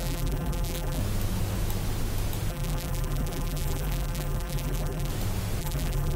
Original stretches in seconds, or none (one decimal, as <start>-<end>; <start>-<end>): 1.0-2.5; 5.1-5.6